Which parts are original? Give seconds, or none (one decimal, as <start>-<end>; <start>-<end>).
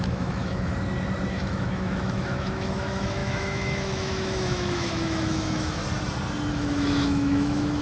0.7-1.3; 5.8-6.5